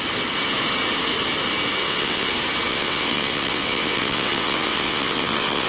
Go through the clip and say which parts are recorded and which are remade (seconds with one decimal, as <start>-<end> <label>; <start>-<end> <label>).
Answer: 0.0-1.8 recorded; 1.8-2.3 remade; 2.3-2.7 recorded; 2.7-5.7 remade